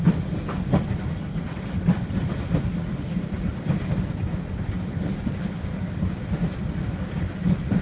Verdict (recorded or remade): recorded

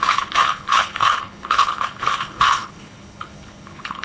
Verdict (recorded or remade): remade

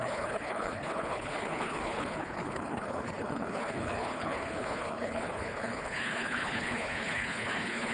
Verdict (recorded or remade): remade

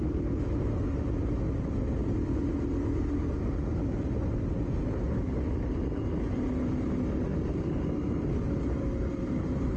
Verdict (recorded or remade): recorded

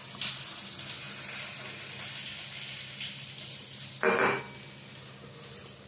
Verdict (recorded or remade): recorded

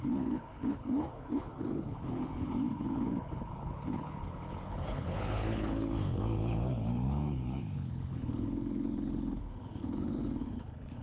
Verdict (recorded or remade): remade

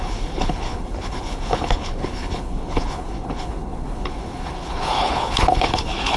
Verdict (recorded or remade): remade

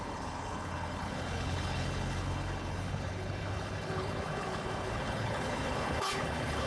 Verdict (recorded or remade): remade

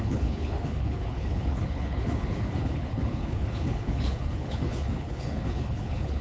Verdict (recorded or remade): remade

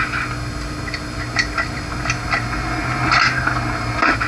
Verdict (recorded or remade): recorded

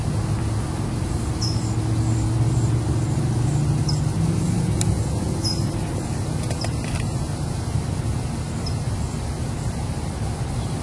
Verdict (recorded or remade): recorded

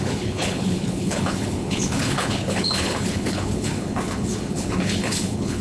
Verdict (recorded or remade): remade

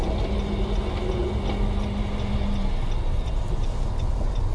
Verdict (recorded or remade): recorded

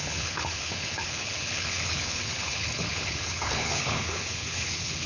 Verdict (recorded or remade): remade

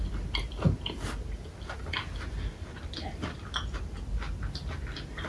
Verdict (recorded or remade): recorded